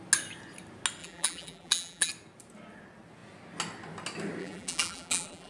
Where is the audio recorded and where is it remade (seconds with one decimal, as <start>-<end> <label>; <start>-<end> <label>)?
0.0-1.0 recorded; 1.0-2.1 remade; 2.1-4.4 recorded; 4.4-5.5 remade